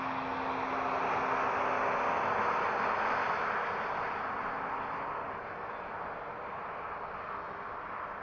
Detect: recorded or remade recorded